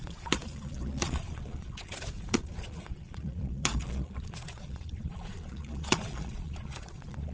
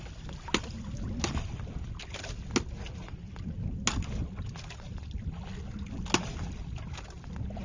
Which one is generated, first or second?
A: first